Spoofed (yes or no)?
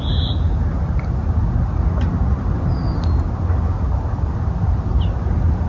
no